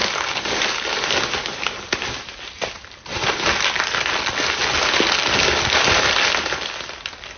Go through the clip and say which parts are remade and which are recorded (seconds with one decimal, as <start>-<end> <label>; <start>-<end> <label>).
0.0-7.4 recorded